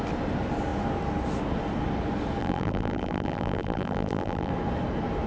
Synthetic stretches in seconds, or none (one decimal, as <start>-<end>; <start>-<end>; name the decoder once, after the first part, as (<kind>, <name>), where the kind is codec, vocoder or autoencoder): 2.4-4.5 (vocoder, BigVGAN v2)